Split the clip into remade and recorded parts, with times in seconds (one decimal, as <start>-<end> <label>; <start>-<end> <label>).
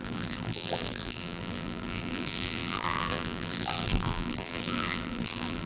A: 0.0-5.7 remade